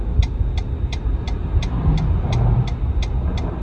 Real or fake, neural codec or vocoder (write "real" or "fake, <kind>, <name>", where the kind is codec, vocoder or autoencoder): real